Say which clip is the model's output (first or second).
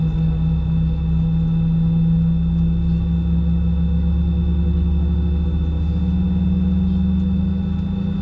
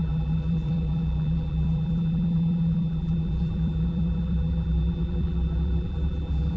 second